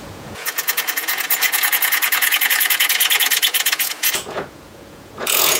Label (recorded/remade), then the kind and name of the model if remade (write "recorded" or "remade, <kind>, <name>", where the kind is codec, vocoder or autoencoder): remade, vocoder, Vocos